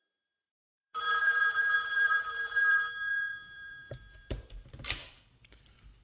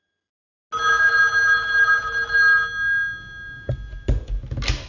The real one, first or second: second